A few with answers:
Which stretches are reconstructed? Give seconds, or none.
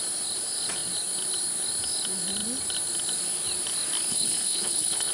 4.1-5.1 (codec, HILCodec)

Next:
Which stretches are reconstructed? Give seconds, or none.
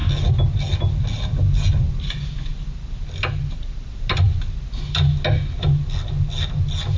none